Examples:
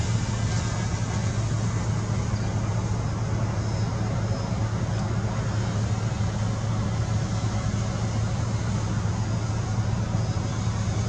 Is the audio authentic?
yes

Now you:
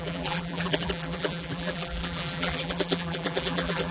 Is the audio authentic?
no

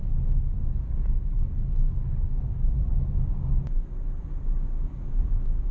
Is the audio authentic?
yes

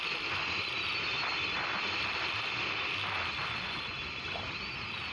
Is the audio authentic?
yes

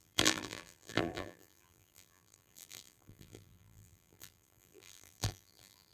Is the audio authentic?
no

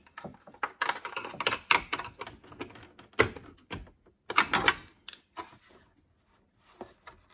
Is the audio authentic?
yes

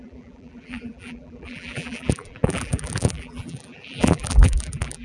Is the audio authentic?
no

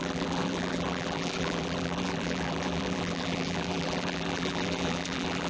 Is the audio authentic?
no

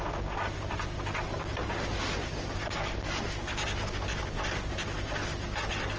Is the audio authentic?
yes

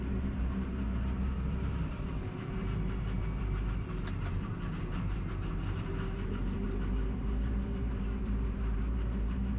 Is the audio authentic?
no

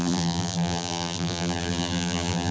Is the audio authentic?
no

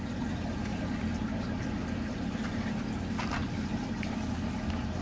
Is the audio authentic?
no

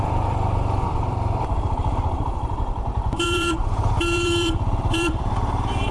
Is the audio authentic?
no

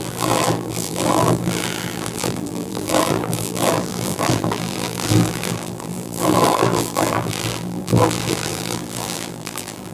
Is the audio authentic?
no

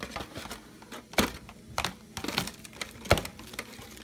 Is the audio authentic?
yes